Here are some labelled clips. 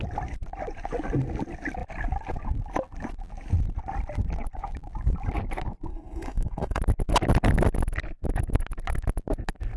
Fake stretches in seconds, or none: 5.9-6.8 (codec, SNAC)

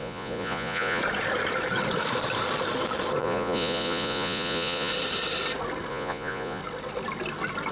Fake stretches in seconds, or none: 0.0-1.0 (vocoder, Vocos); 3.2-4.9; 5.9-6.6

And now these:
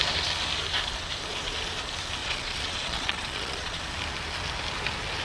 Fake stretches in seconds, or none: 2.2-3.8 (vocoder, Vocos)